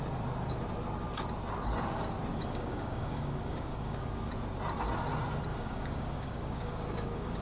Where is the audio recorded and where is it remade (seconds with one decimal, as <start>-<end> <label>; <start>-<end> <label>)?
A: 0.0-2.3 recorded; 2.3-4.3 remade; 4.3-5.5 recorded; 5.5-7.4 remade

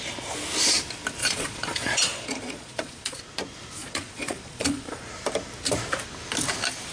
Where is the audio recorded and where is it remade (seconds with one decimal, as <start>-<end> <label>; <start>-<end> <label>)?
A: 0.0-1.2 recorded; 1.2-3.2 remade; 3.2-3.8 recorded; 3.8-5.1 remade; 5.1-6.9 recorded

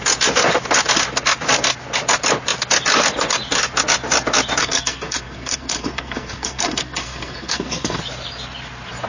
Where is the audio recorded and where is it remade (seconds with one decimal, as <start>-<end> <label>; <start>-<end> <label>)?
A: 0.0-4.6 recorded; 4.6-8.0 remade; 8.0-9.1 recorded